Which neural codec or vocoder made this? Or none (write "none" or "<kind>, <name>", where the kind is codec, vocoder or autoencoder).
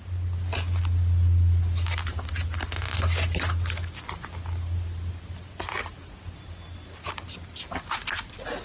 none